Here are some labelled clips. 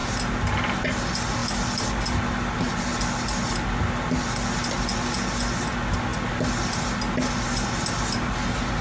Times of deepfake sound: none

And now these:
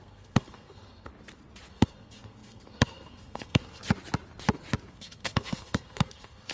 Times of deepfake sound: 0.0-1.1; 1.7-3.8; 4.9-6.5

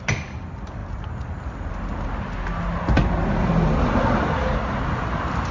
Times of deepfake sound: none

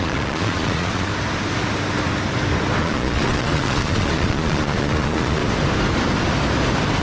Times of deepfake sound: 0.0-1.1; 2.8-5.4

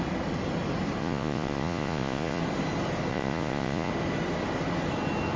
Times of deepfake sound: 1.0-2.4; 3.1-3.9

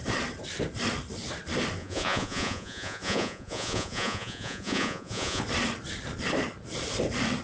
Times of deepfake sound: 1.8-5.4